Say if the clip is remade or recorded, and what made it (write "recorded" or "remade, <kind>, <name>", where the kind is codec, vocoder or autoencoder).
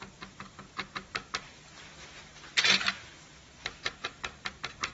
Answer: recorded